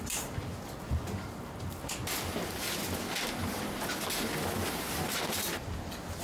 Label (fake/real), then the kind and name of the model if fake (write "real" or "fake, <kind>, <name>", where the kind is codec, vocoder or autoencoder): real